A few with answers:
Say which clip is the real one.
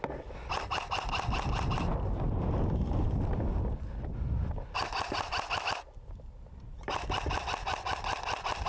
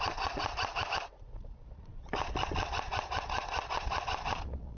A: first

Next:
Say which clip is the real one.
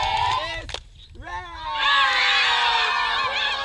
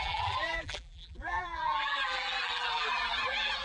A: first